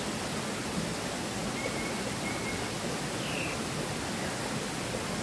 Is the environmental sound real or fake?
real